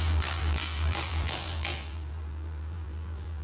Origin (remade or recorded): remade